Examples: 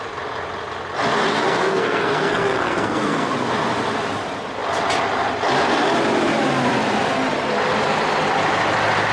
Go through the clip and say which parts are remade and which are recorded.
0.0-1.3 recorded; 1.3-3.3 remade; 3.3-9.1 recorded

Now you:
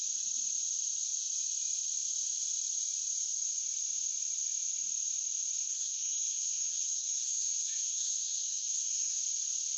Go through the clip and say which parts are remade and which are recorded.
0.0-5.7 recorded; 5.7-9.2 remade; 9.2-9.8 recorded

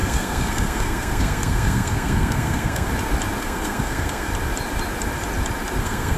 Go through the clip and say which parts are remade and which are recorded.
0.0-2.9 remade; 2.9-3.4 recorded; 3.4-4.3 remade; 4.3-5.8 recorded; 5.8-6.2 remade